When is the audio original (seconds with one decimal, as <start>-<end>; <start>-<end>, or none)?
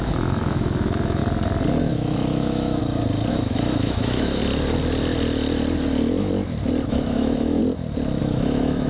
1.2-1.8; 2.8-3.3; 4.4-6.9; 7.6-8.2